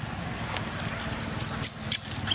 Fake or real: real